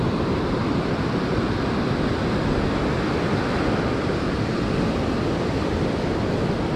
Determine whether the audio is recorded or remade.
recorded